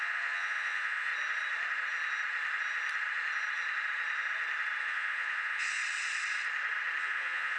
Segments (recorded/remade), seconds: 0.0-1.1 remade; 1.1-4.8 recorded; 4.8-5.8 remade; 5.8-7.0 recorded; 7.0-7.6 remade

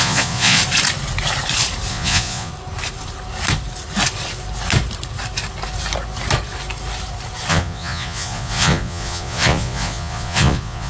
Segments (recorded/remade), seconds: 0.0-0.6 remade; 0.6-1.9 recorded; 1.9-2.5 remade; 2.5-7.5 recorded; 7.5-10.9 remade